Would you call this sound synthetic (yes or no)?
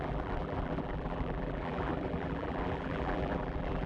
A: yes